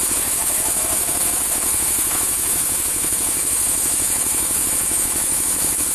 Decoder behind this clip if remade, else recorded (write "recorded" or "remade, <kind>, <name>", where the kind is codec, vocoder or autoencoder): remade, autoencoder, DAC-VAE